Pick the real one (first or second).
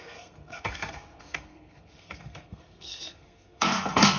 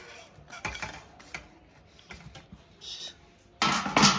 second